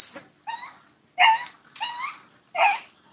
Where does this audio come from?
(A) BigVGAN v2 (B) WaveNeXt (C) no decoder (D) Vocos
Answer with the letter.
C